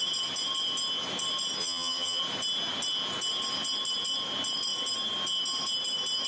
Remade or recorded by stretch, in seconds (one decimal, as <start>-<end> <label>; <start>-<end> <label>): 0.0-1.6 recorded; 1.6-2.2 remade; 2.2-6.3 recorded